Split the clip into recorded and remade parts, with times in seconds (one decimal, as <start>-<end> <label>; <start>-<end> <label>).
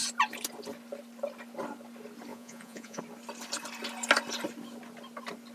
0.0-2.3 recorded; 2.3-3.0 remade; 3.0-5.5 recorded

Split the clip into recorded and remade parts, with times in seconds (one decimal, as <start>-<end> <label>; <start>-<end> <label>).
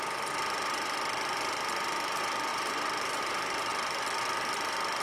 0.0-5.0 recorded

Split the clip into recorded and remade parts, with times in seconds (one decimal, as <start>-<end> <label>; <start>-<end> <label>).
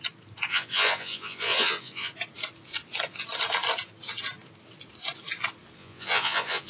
0.0-0.5 recorded; 0.5-2.1 remade; 2.1-5.8 recorded; 5.8-6.7 remade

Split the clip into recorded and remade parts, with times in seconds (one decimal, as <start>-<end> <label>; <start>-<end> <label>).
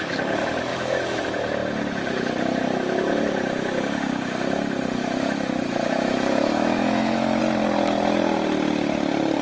0.0-0.7 recorded; 0.7-1.2 remade; 1.2-5.0 recorded; 5.0-7.4 remade; 7.4-9.4 recorded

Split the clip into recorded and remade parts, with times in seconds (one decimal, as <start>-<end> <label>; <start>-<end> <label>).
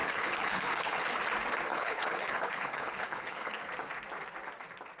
0.0-1.2 remade; 1.2-1.7 recorded; 1.7-3.7 remade; 3.7-5.0 recorded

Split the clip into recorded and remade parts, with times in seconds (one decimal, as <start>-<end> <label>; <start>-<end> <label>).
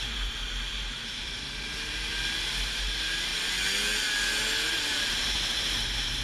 0.0-2.1 remade; 2.1-2.8 recorded; 2.8-3.3 remade; 3.3-4.7 recorded; 4.7-6.2 remade